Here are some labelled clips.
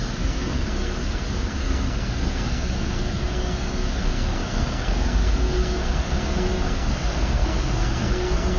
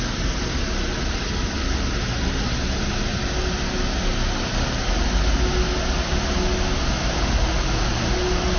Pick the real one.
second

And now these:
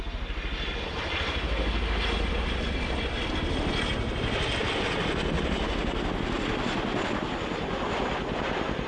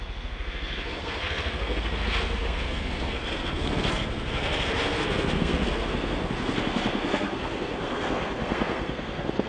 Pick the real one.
first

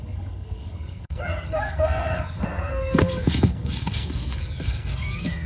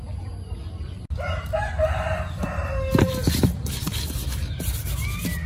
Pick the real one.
second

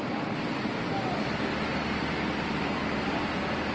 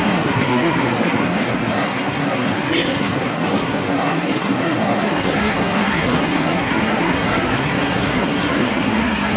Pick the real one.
first